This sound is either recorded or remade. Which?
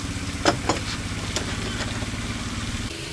recorded